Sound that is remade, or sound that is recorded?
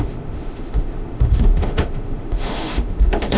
remade